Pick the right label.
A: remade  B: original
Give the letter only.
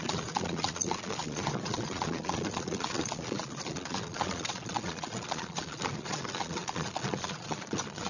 A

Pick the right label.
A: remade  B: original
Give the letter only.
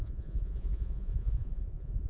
A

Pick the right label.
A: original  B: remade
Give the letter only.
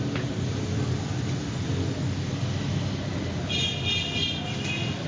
A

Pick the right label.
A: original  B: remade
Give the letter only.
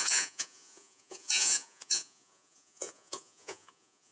B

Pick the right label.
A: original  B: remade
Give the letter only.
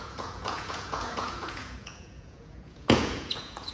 B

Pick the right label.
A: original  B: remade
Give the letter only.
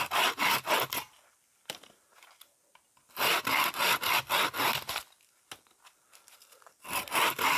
A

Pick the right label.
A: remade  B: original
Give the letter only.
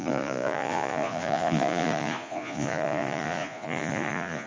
A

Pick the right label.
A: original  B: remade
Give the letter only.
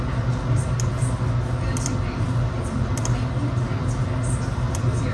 A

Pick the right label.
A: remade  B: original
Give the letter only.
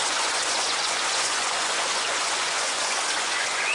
A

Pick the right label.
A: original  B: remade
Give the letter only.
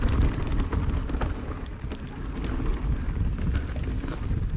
A